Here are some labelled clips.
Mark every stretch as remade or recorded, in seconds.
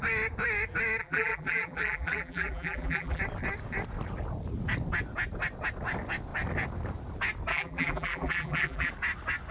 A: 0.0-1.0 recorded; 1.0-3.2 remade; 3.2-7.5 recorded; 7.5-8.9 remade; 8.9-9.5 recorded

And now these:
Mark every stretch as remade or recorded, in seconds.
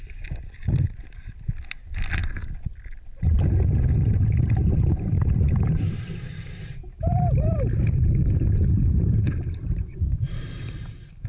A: 0.0-11.3 recorded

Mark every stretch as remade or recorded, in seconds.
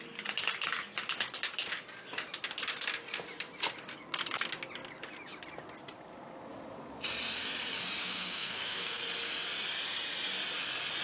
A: 0.0-8.0 recorded; 8.0-9.0 remade; 9.0-11.0 recorded